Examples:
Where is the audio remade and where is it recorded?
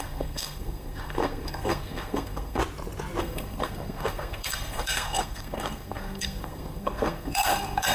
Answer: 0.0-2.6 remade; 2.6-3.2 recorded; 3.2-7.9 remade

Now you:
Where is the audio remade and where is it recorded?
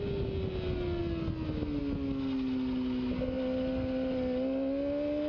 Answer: 0.0-5.3 recorded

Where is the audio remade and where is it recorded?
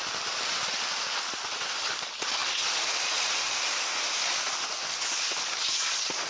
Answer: 0.0-2.4 remade; 2.4-6.3 recorded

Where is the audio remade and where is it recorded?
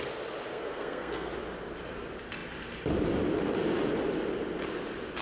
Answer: 0.0-0.5 recorded; 0.5-1.3 remade; 1.3-5.2 recorded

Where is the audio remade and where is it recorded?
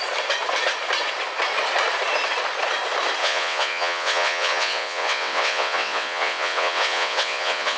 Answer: 0.0-3.2 recorded; 3.2-7.8 remade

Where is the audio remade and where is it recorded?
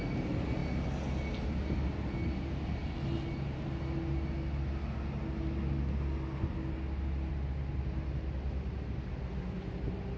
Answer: 0.0-10.2 recorded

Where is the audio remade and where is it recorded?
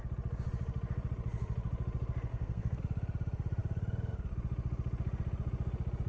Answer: 0.0-2.3 recorded; 2.3-2.8 remade; 2.8-6.1 recorded